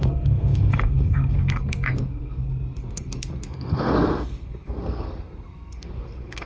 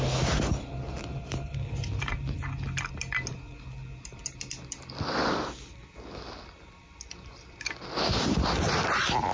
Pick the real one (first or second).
second